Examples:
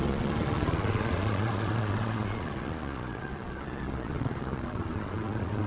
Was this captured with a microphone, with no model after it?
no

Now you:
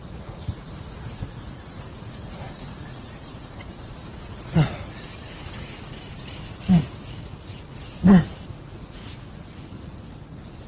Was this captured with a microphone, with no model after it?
no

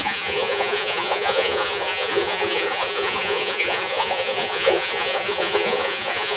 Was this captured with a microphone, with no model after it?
no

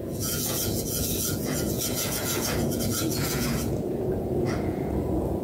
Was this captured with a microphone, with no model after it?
no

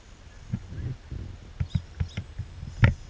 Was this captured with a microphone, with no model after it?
yes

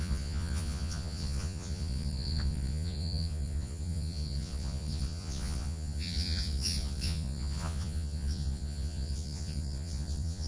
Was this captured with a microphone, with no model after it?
no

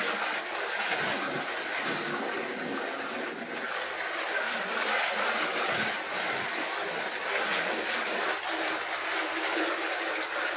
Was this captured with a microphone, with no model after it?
yes